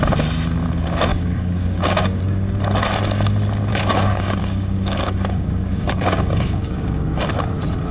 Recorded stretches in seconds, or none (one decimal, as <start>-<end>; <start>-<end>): 0.0-1.1; 2.2-3.7; 7.3-7.9